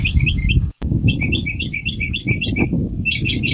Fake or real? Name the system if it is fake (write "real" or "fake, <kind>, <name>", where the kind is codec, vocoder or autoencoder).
fake, codec, DAC